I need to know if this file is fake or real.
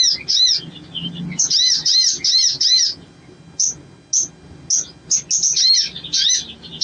real